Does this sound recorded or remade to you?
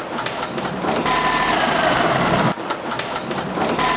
recorded